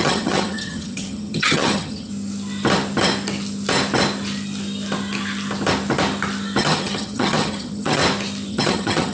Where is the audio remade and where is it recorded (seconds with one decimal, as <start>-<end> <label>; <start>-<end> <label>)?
0.0-2.1 remade; 2.1-6.6 recorded; 6.6-8.0 remade; 8.0-8.5 recorded; 8.5-9.1 remade